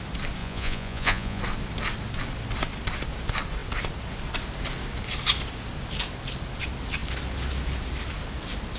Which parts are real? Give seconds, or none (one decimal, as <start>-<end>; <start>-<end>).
0.0-0.4; 1.4-8.8

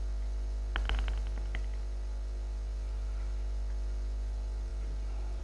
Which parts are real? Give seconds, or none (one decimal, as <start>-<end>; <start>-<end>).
0.0-5.4

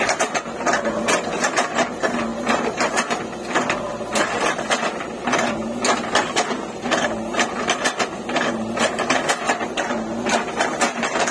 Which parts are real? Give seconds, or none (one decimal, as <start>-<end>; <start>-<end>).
0.0-2.3; 3.2-11.3

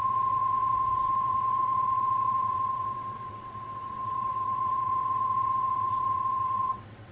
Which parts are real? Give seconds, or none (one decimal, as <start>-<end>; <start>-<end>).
none

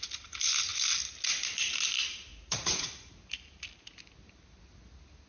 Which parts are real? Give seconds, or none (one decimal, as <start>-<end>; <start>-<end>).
0.0-2.3; 3.1-5.3

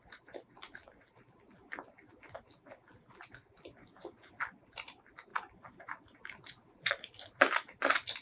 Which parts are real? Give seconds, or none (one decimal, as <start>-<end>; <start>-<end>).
0.0-3.8; 4.3-8.2

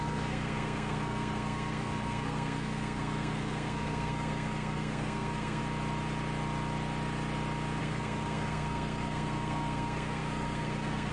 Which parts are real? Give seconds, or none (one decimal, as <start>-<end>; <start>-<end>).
5.6-7.8

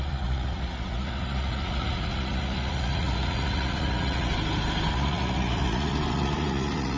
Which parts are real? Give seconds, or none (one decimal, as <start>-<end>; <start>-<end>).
4.3-4.9